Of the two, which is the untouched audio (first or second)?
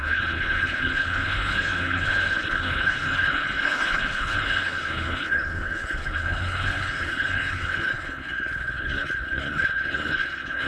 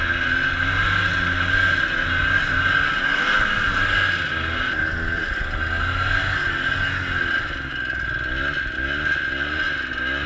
second